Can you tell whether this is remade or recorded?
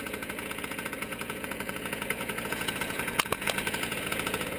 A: remade